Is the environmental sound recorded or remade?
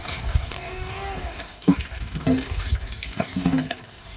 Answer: remade